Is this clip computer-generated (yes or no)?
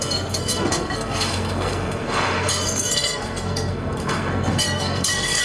yes